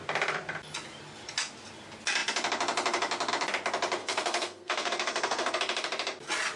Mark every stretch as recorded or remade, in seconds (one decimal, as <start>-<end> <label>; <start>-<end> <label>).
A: 0.0-4.0 recorded; 4.0-5.6 remade; 5.6-6.6 recorded

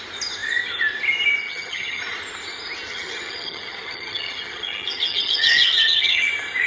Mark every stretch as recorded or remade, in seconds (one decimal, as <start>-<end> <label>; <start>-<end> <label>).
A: 0.0-1.4 recorded; 1.4-2.0 remade; 2.0-2.9 recorded; 2.9-6.3 remade; 6.3-6.7 recorded

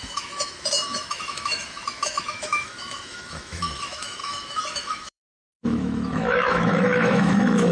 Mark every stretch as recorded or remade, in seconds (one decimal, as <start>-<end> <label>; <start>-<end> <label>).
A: 0.0-7.7 remade

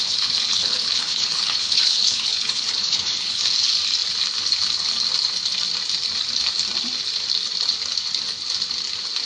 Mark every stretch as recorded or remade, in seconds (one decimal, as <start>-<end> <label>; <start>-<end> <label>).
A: 0.0-3.4 remade; 3.4-9.3 recorded

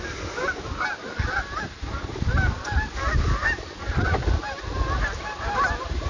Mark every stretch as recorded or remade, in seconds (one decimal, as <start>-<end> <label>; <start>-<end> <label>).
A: 0.0-6.1 recorded

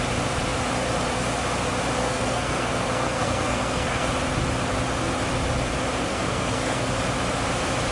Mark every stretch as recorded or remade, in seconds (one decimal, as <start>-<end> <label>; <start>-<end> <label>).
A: 0.0-2.0 recorded; 2.0-4.1 remade; 4.1-6.1 recorded; 6.1-6.9 remade; 6.9-7.9 recorded

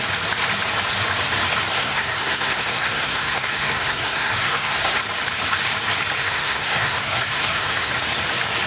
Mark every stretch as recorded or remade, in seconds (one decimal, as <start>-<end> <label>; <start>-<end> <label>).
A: 0.0-1.7 recorded; 1.7-5.0 remade; 5.0-6.2 recorded; 6.2-7.9 remade; 7.9-8.7 recorded